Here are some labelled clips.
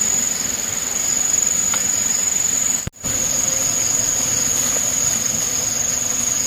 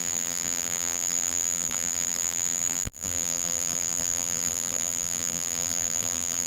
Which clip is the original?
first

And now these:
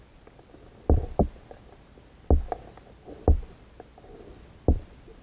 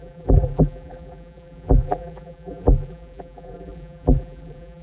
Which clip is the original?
first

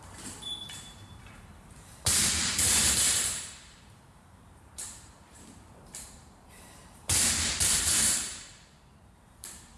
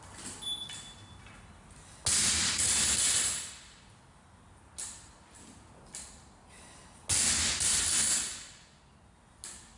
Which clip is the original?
second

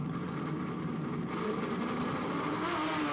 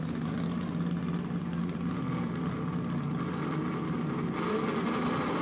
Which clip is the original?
second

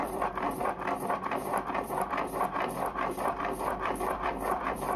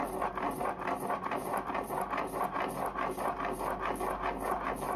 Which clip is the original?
second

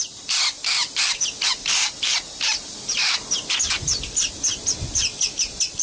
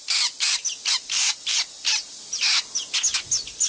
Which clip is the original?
second